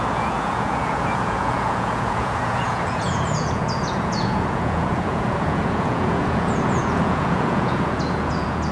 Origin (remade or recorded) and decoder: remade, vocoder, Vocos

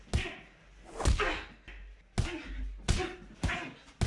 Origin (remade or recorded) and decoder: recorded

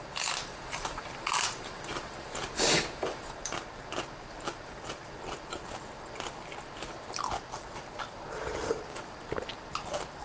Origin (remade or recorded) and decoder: recorded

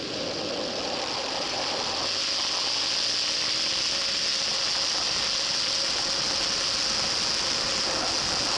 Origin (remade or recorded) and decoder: recorded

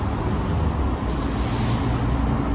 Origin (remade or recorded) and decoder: recorded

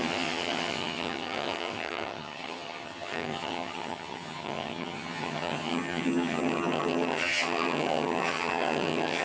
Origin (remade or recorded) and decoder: remade, vocoder, HiFi-GAN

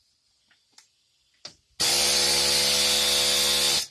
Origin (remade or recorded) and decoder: recorded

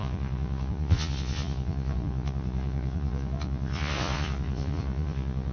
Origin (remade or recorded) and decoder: remade, vocoder, Vocos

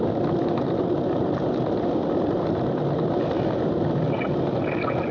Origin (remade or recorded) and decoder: recorded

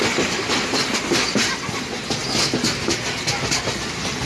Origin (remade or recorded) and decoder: recorded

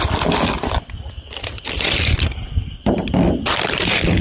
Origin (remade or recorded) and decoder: remade, vocoder, BigVGAN v2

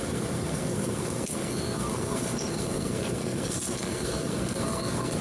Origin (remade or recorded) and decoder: remade, codec, SNAC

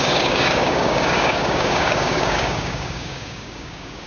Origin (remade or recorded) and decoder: remade, codec, DAC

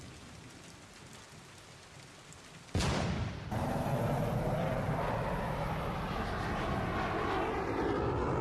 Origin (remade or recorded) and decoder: recorded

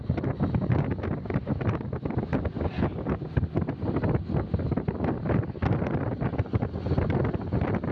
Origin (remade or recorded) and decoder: recorded